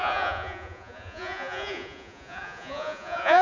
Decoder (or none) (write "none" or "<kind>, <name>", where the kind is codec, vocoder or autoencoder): vocoder, Vocos